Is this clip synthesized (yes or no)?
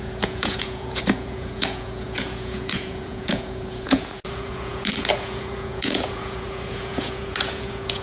yes